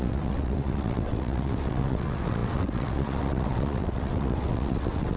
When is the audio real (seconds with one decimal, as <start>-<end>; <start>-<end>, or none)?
none